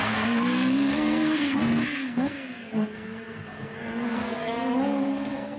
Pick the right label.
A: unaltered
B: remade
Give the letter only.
B